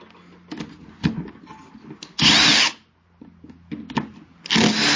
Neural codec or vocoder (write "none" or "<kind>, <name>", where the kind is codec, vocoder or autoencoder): none